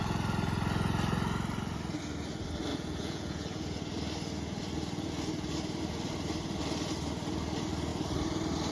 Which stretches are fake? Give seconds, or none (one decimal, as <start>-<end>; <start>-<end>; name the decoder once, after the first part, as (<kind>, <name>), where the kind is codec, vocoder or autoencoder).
2.7-3.8 (vocoder, Vocos)